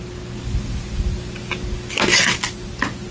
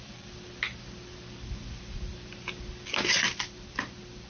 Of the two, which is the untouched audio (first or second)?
first